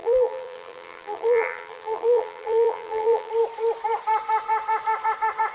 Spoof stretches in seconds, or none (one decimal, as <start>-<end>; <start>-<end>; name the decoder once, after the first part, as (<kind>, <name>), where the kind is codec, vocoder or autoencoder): 0.0-3.3 (vocoder, BigVGAN v2)